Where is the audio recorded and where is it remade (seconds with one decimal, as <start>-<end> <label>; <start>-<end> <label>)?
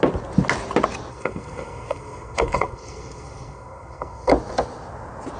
0.0-1.1 recorded; 1.1-4.3 remade; 4.3-5.4 recorded